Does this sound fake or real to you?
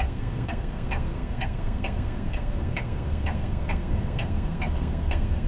fake